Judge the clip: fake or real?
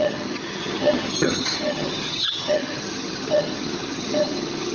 fake